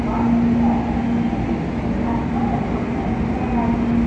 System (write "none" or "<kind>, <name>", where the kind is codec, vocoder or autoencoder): none